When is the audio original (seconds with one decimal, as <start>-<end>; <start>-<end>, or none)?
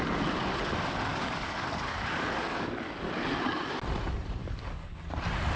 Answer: 0.0-1.1; 3.1-4.4; 5.0-5.6